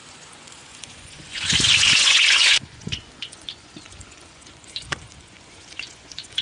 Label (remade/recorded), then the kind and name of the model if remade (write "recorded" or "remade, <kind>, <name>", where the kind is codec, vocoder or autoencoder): remade, vocoder, Vocos